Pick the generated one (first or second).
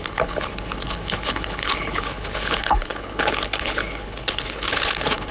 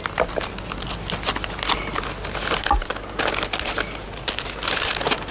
first